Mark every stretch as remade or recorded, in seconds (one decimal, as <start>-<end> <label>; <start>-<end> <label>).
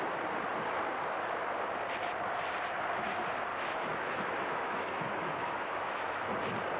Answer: 0.0-3.5 recorded; 3.5-6.3 remade; 6.3-6.8 recorded